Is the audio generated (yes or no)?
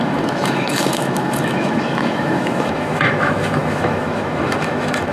yes